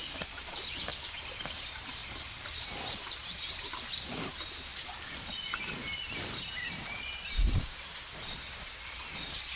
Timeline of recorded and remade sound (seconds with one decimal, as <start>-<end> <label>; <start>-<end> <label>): 0.0-9.6 remade

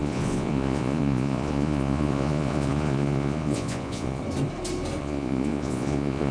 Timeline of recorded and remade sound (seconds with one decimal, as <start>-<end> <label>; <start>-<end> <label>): 0.0-4.2 remade; 4.2-5.0 recorded; 5.0-6.3 remade

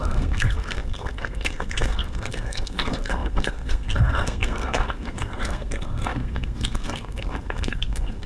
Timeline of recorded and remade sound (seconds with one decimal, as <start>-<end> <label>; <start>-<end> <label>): 0.0-8.3 remade